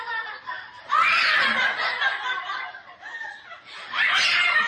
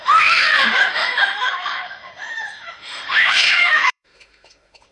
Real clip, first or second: first